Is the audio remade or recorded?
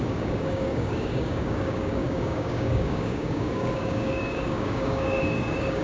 remade